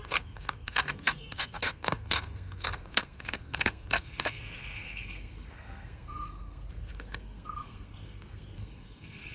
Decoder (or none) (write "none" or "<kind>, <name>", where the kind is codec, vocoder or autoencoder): codec, SNAC